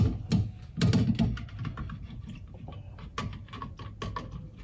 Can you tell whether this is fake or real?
real